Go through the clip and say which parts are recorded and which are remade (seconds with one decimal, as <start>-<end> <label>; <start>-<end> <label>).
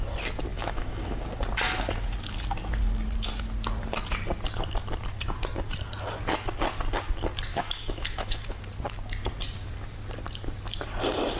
0.0-0.5 recorded; 0.5-1.2 remade; 1.2-7.5 recorded; 7.5-8.6 remade; 8.6-11.4 recorded